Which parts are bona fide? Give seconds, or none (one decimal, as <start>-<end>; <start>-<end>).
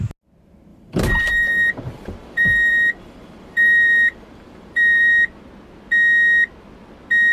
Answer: 0.0-0.7; 5.1-7.3